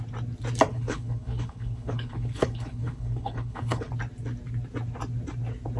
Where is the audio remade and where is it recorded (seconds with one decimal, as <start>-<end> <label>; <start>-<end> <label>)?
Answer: 0.0-0.7 recorded; 0.7-3.9 remade; 3.9-5.8 recorded